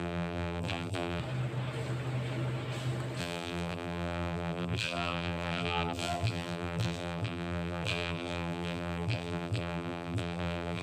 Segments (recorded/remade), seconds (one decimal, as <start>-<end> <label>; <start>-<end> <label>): 0.0-1.2 remade; 1.2-3.2 recorded; 3.2-10.8 remade

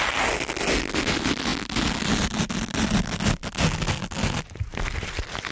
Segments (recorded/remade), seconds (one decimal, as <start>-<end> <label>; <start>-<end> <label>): 0.0-5.5 recorded

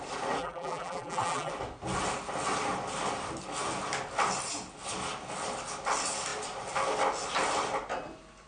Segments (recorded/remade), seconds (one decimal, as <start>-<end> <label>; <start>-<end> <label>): 0.0-0.4 recorded; 0.4-1.5 remade; 1.5-8.5 recorded